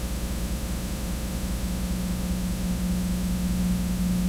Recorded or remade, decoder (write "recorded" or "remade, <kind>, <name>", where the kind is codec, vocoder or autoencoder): remade, autoencoder, DAC-VAE